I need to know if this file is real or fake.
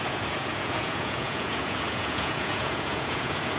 fake